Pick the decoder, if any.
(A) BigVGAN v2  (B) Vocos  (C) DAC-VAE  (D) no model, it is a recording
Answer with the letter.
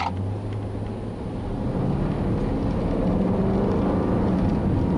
D